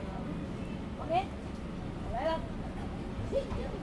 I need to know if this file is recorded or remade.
recorded